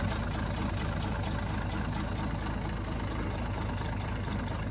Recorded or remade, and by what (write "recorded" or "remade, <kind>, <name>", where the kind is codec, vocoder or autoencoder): recorded